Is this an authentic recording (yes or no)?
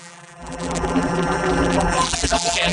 no